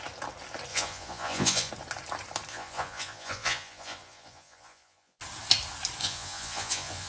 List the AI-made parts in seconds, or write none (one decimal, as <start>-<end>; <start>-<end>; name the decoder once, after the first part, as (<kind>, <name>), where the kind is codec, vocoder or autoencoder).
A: 0.7-1.7 (vocoder, Vocos); 2.5-5.2; 6.0-7.1